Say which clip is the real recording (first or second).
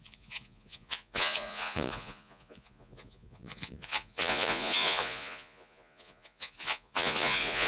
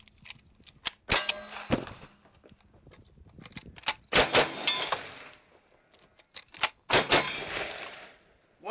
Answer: second